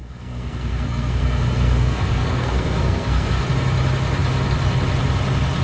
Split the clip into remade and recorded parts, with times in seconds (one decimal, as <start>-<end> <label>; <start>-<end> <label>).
0.0-3.4 remade; 3.4-5.6 recorded